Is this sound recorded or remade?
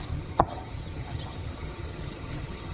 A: remade